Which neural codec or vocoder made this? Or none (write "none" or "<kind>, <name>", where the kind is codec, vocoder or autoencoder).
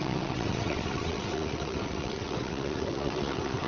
vocoder, WaveNeXt